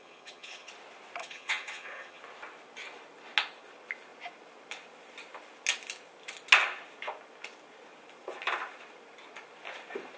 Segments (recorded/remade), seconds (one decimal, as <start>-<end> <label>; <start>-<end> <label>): 0.0-0.7 remade; 0.7-1.2 recorded; 1.2-2.2 remade; 2.2-10.2 recorded